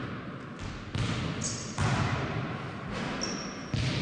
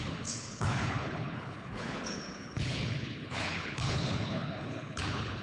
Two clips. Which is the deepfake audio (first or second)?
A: second